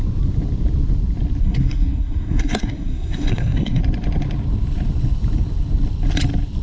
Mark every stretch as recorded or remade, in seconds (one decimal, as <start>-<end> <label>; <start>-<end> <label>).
0.0-1.4 recorded; 1.4-3.8 remade; 3.8-6.6 recorded